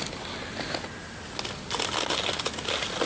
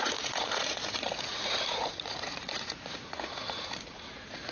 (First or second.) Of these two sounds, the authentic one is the first